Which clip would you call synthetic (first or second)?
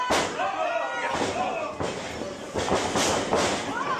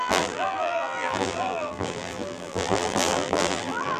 second